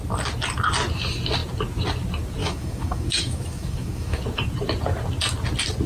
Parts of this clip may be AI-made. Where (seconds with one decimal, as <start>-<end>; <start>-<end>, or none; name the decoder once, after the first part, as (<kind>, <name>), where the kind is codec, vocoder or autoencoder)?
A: 2.4-4.2 (autoencoder, DAC-VAE)